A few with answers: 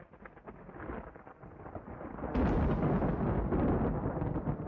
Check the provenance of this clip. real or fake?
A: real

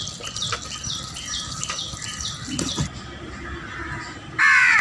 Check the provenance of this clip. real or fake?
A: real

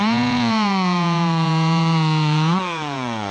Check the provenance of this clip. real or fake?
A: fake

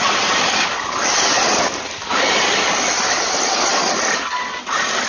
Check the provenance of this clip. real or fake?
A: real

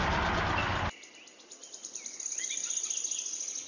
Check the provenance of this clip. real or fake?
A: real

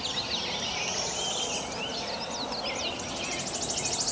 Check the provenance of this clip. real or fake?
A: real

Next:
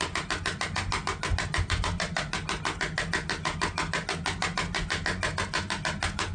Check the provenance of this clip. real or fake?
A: real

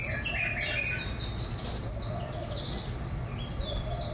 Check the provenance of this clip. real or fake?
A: real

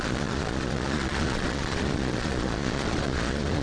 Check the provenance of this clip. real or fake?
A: fake